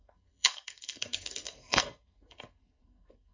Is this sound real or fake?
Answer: fake